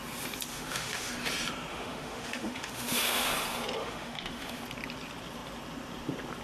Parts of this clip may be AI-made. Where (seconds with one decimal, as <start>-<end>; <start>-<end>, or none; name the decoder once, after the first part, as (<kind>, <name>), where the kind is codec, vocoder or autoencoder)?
0.5-1.1 (autoencoder, DAC-VAE); 1.7-3.3; 3.8-4.6